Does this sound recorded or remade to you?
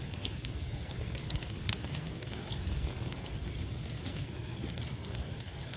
remade